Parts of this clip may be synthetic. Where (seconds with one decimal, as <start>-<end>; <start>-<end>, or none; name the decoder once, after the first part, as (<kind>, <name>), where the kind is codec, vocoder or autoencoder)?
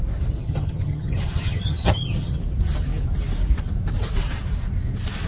0.4-2.4 (vocoder, HiFi-GAN)